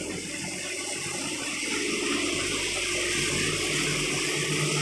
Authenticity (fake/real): real